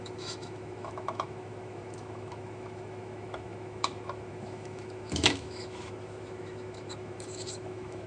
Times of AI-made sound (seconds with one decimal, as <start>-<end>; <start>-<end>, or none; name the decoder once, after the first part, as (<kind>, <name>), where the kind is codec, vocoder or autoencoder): 0.0-8.1 (autoencoder, DAC-VAE)